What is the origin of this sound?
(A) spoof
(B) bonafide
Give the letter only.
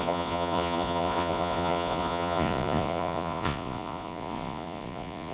A